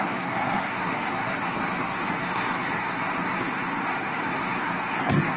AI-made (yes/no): yes